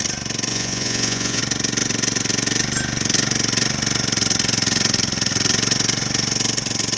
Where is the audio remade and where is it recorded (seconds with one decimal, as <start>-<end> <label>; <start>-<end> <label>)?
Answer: 0.0-0.5 recorded; 0.5-1.4 remade; 1.4-7.0 recorded